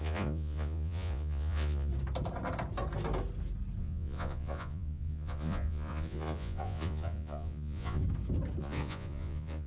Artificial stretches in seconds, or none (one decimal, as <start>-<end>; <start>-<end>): 0.0-1.9; 3.8-8.0; 8.6-9.7